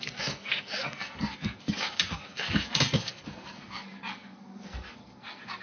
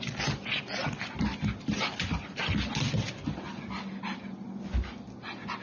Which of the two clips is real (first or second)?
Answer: second